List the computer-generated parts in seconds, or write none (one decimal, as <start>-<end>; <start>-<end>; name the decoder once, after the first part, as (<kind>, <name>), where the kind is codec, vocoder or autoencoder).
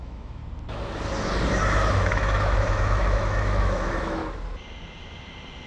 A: 0.0-0.4 (autoencoder, DAC-VAE); 1.9-4.2